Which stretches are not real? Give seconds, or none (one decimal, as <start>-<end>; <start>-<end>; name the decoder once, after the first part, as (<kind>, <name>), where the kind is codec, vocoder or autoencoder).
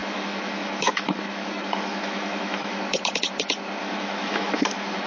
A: 0.0-2.8 (autoencoder, DAC-VAE); 3.8-5.1